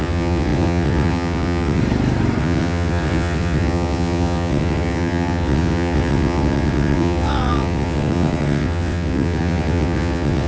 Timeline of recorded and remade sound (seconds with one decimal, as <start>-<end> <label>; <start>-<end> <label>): 0.0-1.8 remade; 1.8-2.4 recorded; 2.4-10.5 remade